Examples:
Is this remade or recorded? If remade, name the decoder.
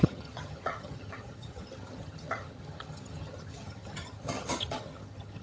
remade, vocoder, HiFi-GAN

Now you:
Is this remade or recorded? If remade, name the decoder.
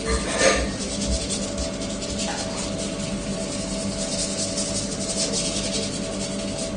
recorded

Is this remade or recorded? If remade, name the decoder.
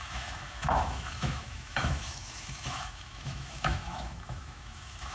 remade, autoencoder, DAC-VAE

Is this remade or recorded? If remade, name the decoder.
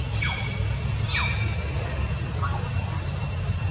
recorded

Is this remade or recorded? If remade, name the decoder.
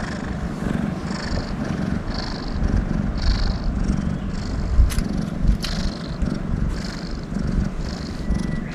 recorded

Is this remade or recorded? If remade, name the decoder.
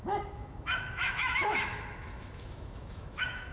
remade, autoencoder, DAC-VAE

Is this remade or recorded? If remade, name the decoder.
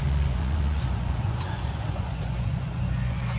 remade, vocoder, Vocos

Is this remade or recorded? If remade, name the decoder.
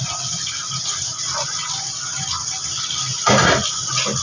recorded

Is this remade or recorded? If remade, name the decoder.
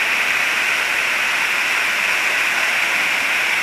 recorded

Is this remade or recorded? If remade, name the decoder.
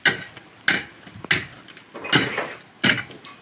recorded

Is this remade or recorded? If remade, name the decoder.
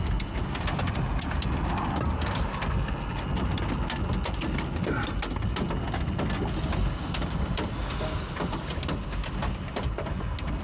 recorded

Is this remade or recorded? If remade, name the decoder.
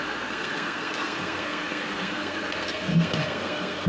remade, codec, SNAC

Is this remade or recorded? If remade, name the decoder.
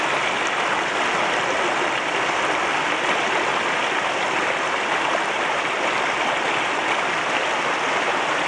recorded